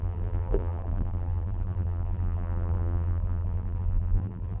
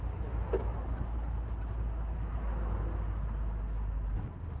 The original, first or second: second